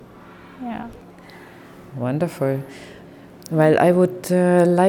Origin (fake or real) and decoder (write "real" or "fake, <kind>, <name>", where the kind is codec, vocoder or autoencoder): real